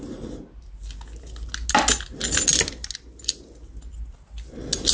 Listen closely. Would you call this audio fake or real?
real